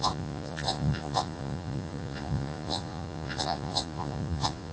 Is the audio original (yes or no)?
no